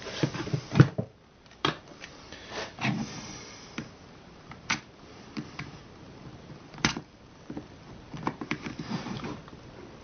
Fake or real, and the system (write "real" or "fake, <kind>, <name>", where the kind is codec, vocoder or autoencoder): fake, vocoder, BigVGAN v2